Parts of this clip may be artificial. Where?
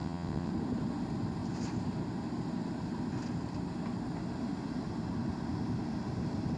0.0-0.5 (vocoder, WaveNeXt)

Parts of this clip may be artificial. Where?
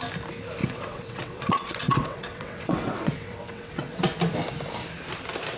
0.6-4.0 (vocoder, WaveNeXt)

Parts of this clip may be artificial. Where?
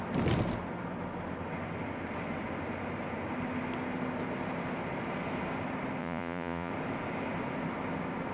6.0-6.7 (vocoder, Vocos)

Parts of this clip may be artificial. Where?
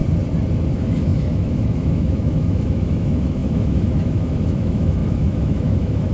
0.7-6.1 (autoencoder, DAC-VAE)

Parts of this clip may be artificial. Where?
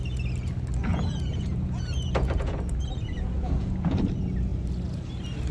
0.8-4.1 (vocoder, Vocos)